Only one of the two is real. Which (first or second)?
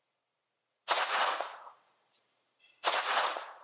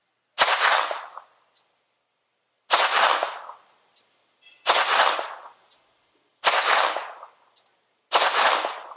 second